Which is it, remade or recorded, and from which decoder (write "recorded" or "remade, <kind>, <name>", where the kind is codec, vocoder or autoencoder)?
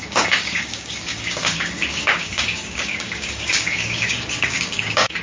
remade, codec, DAC